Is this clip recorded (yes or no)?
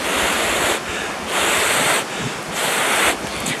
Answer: yes